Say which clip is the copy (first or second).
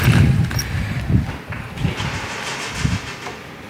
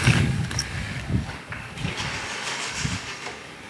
second